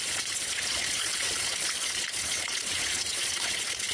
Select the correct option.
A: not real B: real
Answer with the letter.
A